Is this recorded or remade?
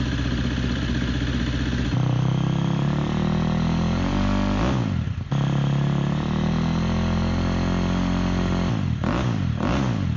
recorded